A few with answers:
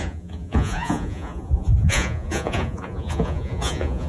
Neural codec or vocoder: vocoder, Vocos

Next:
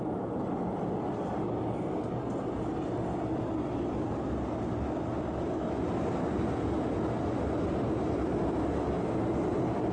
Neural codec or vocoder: none